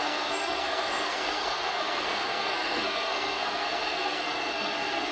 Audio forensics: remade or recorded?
remade